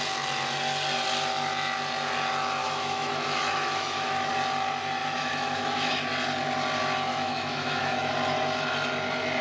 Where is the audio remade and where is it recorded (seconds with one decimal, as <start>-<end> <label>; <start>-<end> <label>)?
0.0-2.6 recorded; 2.6-4.3 remade; 4.3-5.0 recorded; 5.0-6.0 remade; 6.0-7.1 recorded; 7.1-8.1 remade; 8.1-9.4 recorded